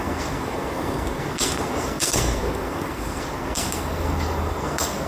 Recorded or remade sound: remade